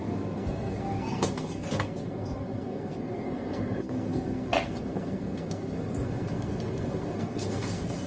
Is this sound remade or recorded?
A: remade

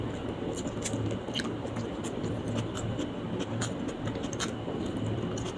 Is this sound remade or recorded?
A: recorded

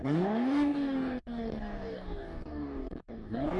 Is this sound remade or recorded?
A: remade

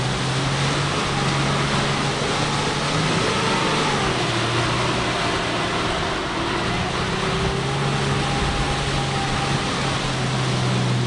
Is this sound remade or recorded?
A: recorded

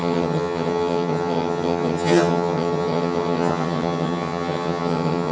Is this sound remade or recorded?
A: remade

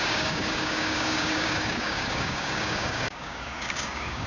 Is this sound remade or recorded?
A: remade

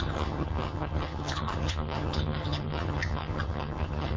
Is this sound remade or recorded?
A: remade